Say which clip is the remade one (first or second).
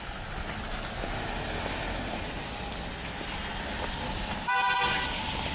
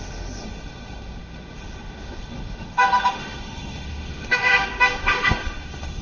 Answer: second